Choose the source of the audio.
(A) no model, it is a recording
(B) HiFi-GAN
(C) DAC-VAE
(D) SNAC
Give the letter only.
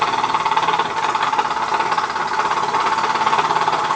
A